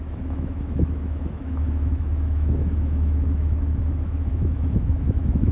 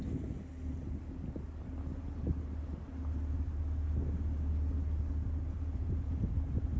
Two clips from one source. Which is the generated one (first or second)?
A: first